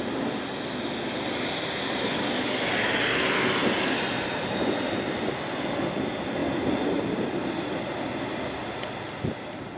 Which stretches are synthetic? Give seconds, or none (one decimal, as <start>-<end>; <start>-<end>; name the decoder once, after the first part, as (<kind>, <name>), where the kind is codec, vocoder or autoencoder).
none